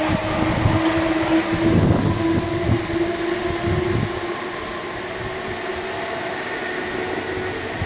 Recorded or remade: recorded